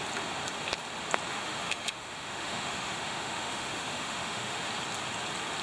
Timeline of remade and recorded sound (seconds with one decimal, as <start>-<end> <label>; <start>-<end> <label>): 0.0-1.3 recorded; 1.3-4.7 remade; 4.7-5.6 recorded

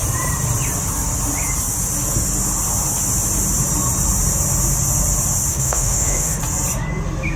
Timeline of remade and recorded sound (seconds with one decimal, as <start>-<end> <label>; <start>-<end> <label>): 0.0-5.5 recorded; 5.5-6.4 remade; 6.4-7.4 recorded

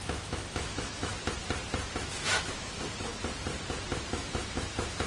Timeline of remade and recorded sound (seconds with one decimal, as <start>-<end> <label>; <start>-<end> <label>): 0.0-1.1 remade; 1.1-1.9 recorded; 1.9-3.1 remade; 3.1-4.1 recorded; 4.1-5.1 remade

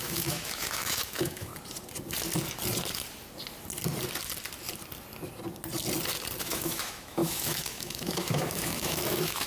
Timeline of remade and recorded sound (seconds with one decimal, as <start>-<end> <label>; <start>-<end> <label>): 0.0-1.5 remade; 1.5-6.4 recorded; 6.4-9.5 remade

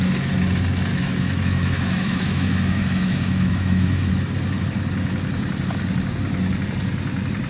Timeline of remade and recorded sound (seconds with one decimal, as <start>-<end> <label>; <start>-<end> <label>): 0.0-0.9 recorded; 0.9-4.1 remade; 4.1-7.5 recorded

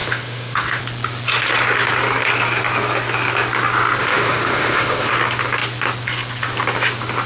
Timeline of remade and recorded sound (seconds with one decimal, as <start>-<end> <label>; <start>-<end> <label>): 0.0-0.8 remade; 0.8-4.0 recorded; 4.0-5.1 remade; 5.1-7.3 recorded

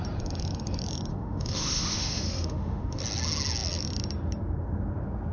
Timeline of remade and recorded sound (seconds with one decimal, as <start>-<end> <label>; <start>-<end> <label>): 0.0-1.1 recorded; 1.1-3.0 remade; 3.0-5.3 recorded